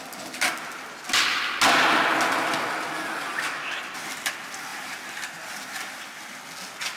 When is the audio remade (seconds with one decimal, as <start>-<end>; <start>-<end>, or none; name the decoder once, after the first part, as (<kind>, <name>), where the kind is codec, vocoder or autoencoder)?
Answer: 4.7-6.4 (vocoder, BigVGAN v2)